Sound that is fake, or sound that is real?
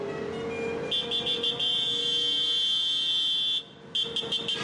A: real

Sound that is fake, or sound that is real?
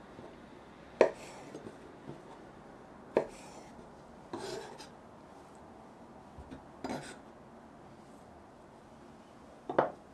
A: real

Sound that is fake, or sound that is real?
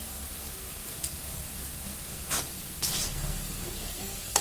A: fake